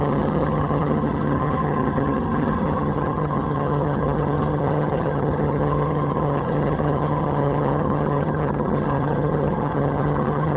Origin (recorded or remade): remade